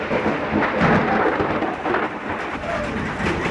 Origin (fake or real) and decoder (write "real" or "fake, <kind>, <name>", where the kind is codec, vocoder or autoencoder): fake, vocoder, BigVGAN v2